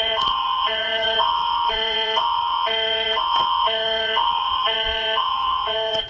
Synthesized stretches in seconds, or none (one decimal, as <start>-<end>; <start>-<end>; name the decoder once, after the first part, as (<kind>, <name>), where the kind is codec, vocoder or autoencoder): 0.0-6.1 (vocoder, WaveNeXt)

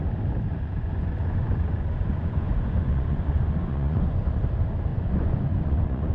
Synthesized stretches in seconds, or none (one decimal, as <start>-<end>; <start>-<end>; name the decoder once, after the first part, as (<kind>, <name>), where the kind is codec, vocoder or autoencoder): 0.5-4.2 (vocoder, Vocos); 4.9-6.1

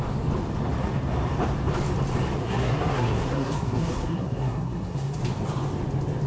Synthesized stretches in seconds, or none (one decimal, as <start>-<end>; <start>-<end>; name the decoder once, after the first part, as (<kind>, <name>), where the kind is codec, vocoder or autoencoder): 2.4-5.2 (codec, SNAC)